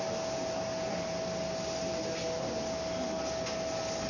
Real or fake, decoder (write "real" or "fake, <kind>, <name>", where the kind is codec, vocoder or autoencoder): real